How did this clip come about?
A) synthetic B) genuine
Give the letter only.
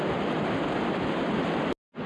B